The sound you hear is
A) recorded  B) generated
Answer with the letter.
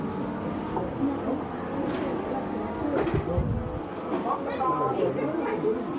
A